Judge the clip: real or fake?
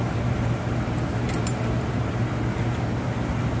real